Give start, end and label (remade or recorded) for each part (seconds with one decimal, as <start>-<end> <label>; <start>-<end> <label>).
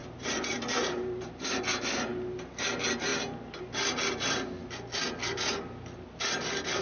0.0-1.6 remade; 1.6-6.8 recorded